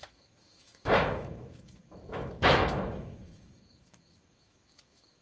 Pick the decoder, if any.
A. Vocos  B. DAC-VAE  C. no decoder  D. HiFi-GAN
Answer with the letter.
B